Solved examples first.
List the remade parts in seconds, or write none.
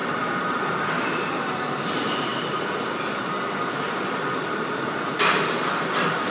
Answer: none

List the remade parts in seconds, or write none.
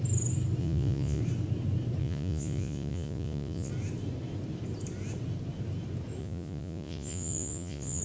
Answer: 0.6-1.2 (vocoder, Vocos); 2.0-3.7; 6.2-8.0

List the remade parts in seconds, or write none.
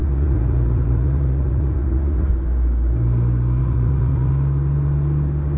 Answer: 0.0-2.3 (vocoder, Vocos); 3.6-4.3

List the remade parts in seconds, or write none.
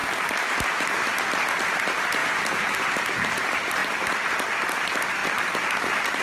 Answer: none